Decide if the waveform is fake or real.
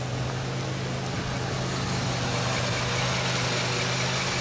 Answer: real